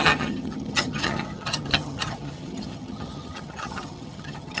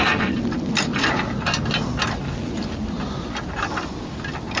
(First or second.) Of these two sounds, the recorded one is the second